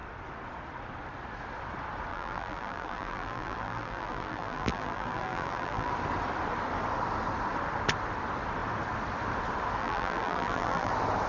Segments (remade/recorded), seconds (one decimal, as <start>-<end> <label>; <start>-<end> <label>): 0.0-2.1 recorded; 2.1-5.9 remade; 5.9-9.8 recorded; 9.8-10.9 remade; 10.9-11.3 recorded